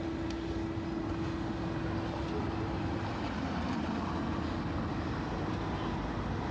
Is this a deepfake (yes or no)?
no